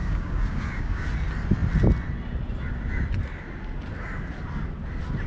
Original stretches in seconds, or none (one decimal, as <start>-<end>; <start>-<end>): 1.1-5.3